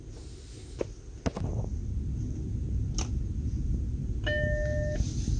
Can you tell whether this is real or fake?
real